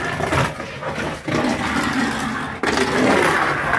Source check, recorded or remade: recorded